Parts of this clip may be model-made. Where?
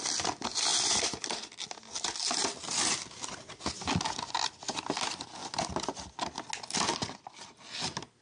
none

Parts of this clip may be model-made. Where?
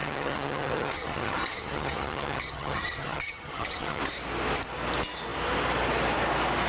0.0-4.0 (vocoder, HiFi-GAN)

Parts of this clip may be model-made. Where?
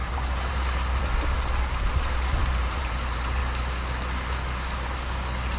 0.0-3.4 (vocoder, BigVGAN v2)